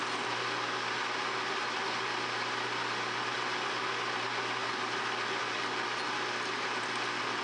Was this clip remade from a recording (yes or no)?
no